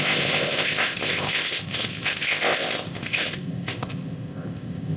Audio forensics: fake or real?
fake